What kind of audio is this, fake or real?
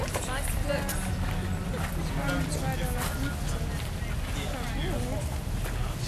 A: real